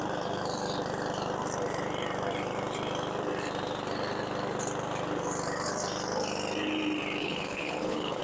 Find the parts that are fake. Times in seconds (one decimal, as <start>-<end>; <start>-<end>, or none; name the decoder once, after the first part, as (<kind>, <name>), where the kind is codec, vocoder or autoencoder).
7.2-8.2 (codec, HILCodec)

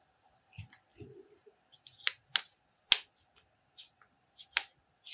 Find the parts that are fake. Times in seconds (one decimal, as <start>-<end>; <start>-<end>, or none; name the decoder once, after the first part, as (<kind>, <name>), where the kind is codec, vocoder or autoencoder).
none

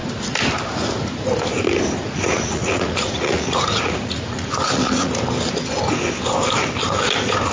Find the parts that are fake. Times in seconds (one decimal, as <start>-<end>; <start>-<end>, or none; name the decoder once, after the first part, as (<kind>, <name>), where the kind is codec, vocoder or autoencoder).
2.0-5.1 (vocoder, Vocos)

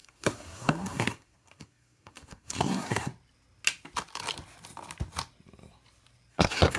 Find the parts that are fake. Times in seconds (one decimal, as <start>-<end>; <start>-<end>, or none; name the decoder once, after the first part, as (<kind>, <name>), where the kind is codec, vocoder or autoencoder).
0.0-3.1 (codec, SNAC); 6.3-6.8